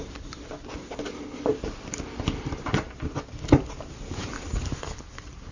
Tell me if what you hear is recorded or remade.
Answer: remade